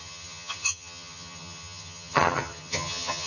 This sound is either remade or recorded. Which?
remade